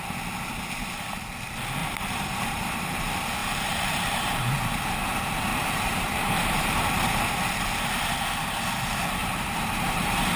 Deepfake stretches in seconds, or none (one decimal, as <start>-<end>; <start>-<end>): 1.8-3.0; 3.4-4.5; 5.5-7.2; 9.2-10.4

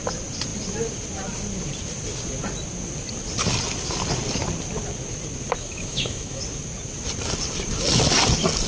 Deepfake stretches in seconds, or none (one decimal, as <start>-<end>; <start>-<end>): 5.6-6.4

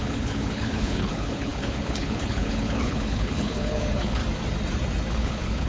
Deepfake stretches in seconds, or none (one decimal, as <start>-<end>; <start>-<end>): 0.0-4.2; 5.1-5.7

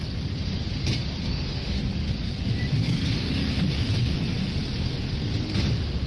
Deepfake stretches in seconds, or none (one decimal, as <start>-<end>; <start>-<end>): 1.3-1.8; 2.8-3.4